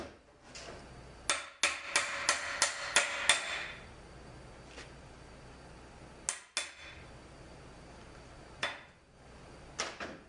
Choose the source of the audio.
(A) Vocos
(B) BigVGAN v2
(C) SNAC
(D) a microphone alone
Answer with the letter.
D